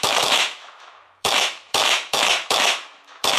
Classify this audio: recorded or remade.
remade